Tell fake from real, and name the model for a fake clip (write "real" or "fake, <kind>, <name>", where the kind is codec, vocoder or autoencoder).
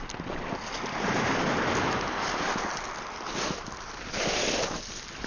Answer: real